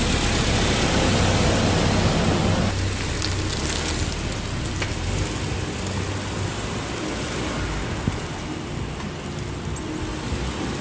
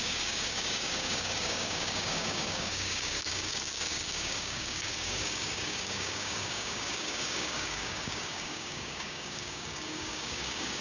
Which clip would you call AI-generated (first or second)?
second